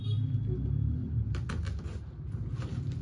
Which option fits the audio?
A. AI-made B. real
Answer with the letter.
B